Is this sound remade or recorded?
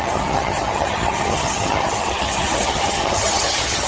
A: remade